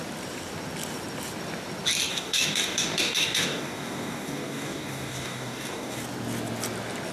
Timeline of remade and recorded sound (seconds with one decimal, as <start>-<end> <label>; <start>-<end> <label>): 0.0-2.1 recorded; 2.1-6.0 remade; 6.0-7.1 recorded